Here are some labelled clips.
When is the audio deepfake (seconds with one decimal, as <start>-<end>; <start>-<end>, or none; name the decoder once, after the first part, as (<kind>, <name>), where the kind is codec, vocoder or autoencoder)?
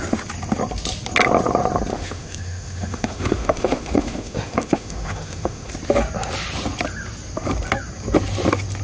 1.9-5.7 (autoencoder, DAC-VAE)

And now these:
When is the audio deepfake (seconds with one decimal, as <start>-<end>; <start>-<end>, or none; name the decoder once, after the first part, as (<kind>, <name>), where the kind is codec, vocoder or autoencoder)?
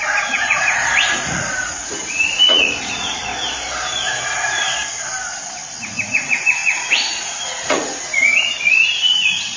0.0-3.3 (vocoder, Vocos); 5.9-9.6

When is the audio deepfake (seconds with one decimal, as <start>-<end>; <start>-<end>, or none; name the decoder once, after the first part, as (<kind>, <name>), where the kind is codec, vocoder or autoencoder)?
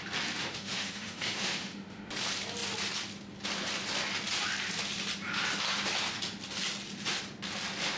0.4-2.1 (autoencoder, DAC-VAE)